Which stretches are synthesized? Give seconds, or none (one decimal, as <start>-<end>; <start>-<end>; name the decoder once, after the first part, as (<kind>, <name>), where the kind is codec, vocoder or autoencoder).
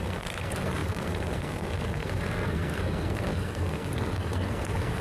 0.0-5.0 (codec, SNAC)